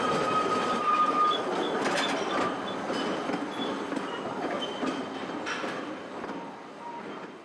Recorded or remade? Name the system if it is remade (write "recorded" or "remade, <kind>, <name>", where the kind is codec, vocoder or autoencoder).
recorded